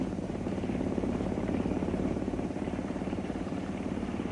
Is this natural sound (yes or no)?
no